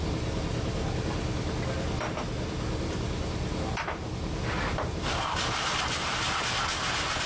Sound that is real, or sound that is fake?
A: real